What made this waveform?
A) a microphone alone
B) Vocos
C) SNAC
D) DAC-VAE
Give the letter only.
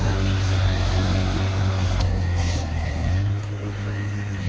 C